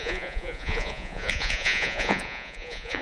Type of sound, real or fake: fake